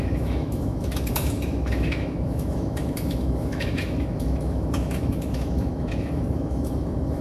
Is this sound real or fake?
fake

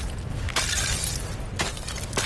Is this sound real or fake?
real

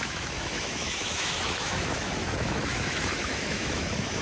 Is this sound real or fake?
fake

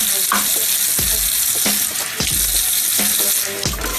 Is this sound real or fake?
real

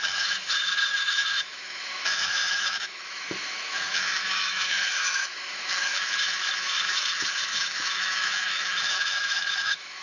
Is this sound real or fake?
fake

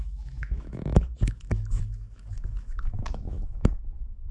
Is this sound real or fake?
fake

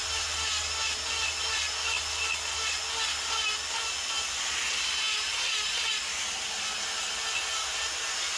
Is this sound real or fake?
real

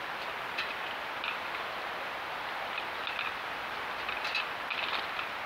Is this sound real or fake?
real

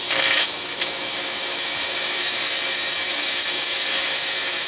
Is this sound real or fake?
fake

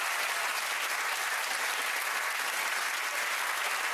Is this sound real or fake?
real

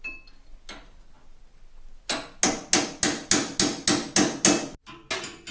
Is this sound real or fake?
real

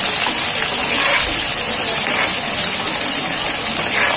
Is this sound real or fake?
real